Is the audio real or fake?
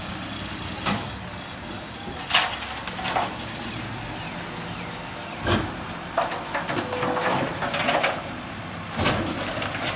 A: real